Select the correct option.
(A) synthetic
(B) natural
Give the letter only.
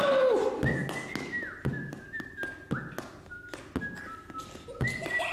B